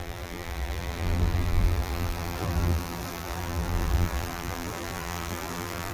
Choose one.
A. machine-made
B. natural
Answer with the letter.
A